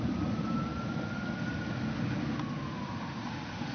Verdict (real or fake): real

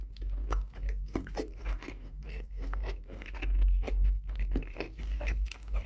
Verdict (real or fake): fake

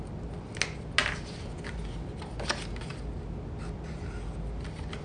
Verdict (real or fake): real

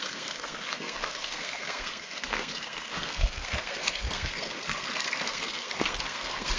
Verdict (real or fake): fake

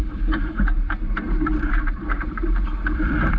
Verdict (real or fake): fake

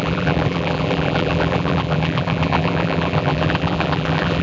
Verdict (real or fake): fake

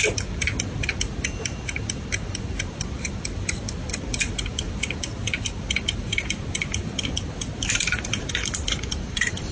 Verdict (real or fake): fake